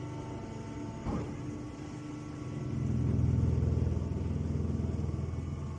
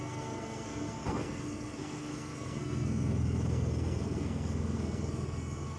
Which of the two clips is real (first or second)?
first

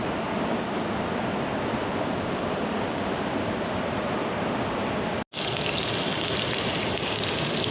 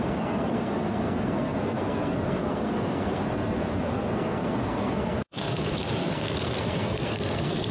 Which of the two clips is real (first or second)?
first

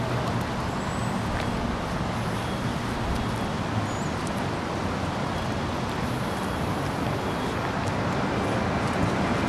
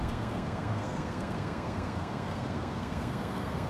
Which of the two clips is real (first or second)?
first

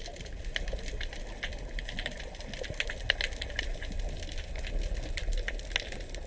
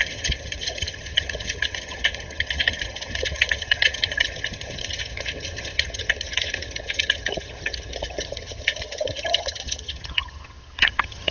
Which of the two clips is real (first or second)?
first